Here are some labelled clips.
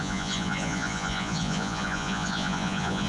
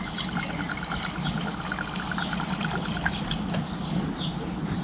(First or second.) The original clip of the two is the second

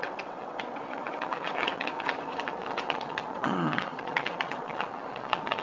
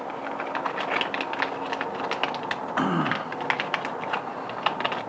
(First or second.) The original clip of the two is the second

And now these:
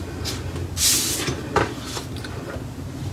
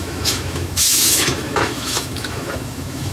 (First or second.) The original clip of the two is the first